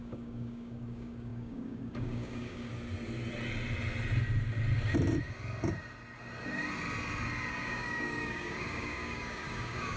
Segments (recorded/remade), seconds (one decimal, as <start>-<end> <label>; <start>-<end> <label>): 0.0-2.7 remade; 2.7-7.5 recorded; 7.5-10.0 remade